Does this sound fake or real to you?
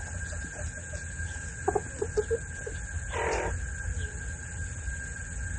real